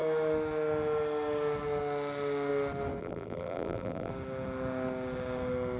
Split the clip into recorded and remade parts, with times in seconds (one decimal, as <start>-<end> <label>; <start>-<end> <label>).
0.0-3.0 recorded; 3.0-4.1 remade; 4.1-5.8 recorded